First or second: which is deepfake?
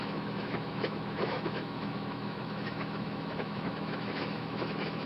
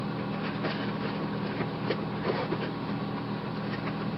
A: first